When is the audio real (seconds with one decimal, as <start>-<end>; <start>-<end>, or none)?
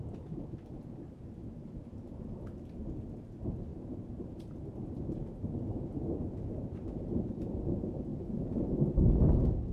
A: 0.0-3.7; 6.8-9.7